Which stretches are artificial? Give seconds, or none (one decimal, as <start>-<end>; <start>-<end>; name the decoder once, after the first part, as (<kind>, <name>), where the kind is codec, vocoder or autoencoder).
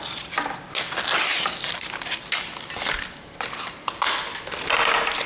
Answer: 1.3-4.2 (vocoder, BigVGAN v2)